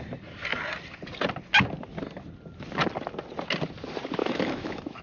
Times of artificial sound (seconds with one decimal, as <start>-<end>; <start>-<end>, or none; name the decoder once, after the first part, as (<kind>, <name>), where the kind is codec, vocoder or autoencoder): 4.2-5.0 (autoencoder, DAC-VAE)